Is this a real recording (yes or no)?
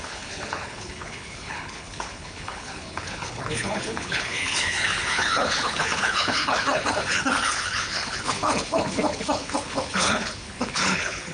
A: no